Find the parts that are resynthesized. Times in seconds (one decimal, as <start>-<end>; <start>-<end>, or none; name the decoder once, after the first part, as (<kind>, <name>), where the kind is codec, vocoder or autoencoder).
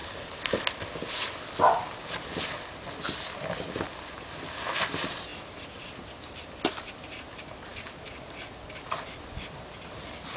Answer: none